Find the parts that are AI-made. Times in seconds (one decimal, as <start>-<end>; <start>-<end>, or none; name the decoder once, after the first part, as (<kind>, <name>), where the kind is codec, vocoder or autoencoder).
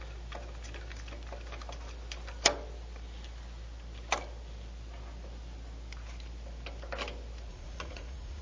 7.5-8.4 (vocoder, Vocos)